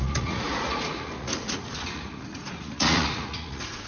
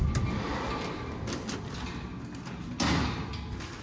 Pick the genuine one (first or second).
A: second